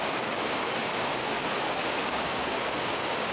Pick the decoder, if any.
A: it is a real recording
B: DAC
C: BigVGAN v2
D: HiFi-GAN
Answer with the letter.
B